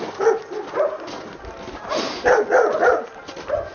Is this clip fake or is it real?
real